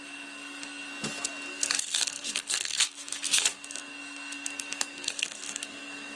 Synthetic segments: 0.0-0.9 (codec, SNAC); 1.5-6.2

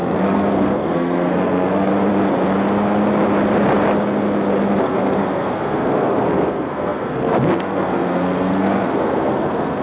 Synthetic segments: 0.0-1.9 (codec, SNAC); 4.8-9.8